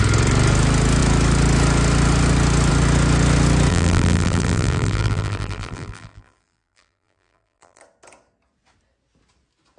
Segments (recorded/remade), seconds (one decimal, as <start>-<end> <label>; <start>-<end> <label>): 0.0-3.7 recorded; 3.7-7.8 remade; 7.8-9.8 recorded